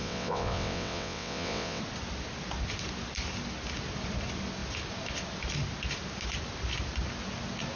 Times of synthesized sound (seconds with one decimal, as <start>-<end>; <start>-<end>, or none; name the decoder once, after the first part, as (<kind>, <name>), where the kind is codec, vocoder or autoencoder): 0.0-1.8 (vocoder, WaveNeXt)